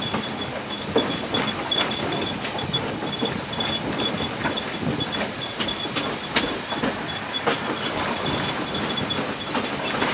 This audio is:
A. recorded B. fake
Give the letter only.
A